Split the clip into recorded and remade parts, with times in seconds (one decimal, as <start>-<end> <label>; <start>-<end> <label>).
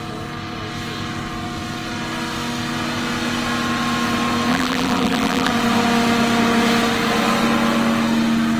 0.0-4.5 recorded; 4.5-5.5 remade; 5.5-8.6 recorded